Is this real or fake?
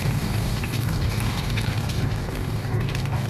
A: fake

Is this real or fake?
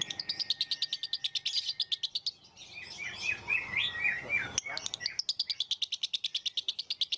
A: real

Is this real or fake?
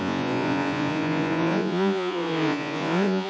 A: fake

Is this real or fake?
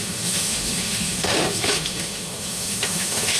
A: fake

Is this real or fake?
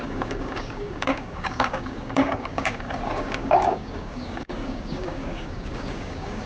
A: fake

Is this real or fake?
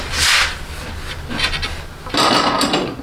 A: real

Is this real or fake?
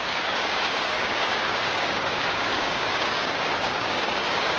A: fake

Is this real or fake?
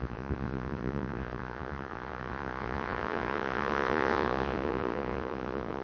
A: fake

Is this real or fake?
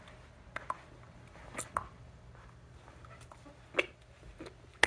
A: real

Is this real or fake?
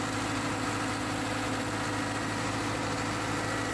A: real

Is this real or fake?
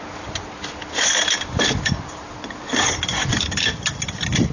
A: real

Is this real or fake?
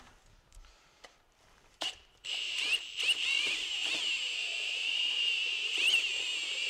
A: fake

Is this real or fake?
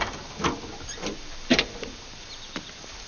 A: real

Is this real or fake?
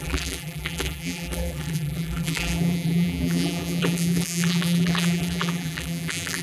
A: fake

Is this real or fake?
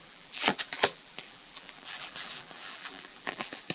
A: fake